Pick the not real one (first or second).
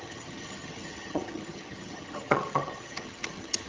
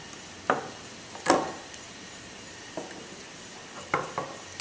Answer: first